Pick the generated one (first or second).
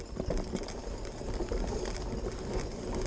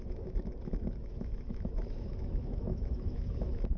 second